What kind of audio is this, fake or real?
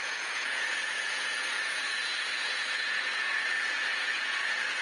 fake